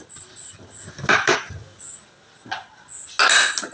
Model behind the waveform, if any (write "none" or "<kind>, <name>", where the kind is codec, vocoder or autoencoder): none